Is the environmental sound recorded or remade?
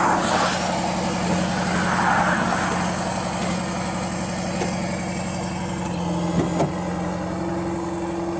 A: recorded